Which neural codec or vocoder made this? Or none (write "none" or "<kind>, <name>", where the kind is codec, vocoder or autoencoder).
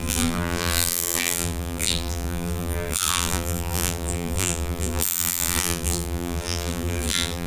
vocoder, BigVGAN v2